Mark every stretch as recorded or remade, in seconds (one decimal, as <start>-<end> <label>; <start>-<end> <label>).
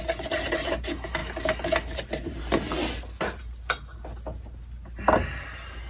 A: 0.0-5.9 recorded